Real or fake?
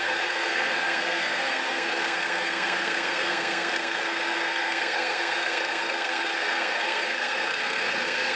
fake